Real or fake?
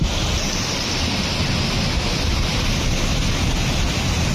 real